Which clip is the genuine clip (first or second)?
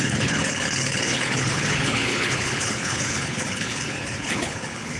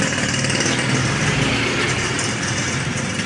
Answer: second